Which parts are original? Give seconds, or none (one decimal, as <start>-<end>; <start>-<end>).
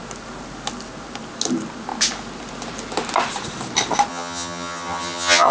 0.0-4.1